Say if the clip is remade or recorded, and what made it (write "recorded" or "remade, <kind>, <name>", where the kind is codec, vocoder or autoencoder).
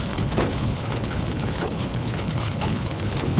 remade, codec, HILCodec